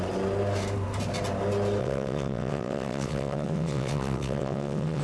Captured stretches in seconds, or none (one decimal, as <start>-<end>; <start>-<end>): 0.0-1.8